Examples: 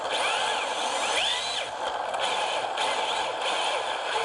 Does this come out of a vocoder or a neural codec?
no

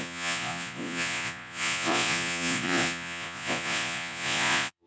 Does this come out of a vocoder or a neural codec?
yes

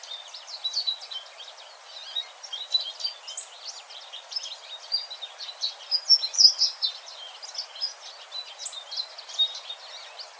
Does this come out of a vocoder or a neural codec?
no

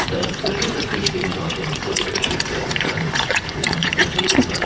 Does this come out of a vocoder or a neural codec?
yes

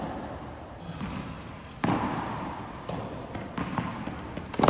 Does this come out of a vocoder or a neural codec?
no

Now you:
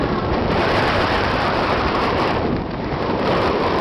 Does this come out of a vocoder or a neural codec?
yes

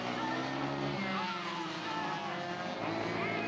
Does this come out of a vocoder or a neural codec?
no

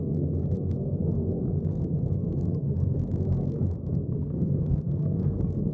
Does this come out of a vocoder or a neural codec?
yes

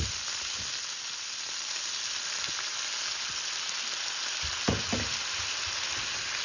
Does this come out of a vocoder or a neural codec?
no